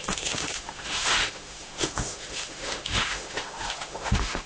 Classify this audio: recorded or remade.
remade